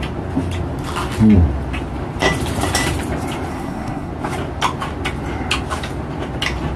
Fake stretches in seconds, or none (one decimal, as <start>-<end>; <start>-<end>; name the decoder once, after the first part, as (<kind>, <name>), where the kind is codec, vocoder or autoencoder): 3.5-4.1 (codec, SNAC)